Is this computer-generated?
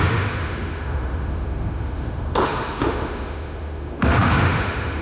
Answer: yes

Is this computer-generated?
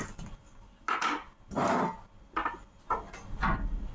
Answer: no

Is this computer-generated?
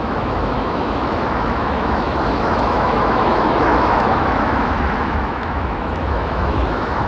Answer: yes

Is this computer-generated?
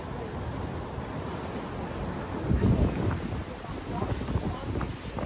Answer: no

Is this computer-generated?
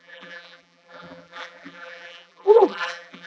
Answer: yes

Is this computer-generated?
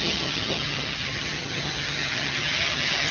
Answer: yes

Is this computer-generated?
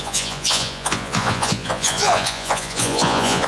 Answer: yes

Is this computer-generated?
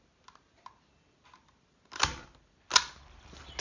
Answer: no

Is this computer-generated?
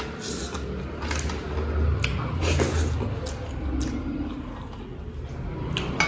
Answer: no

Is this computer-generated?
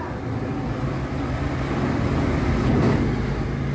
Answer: no